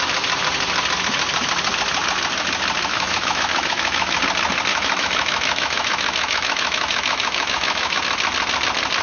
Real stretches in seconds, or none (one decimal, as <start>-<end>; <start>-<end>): 0.0-2.9; 4.2-4.7; 8.0-9.0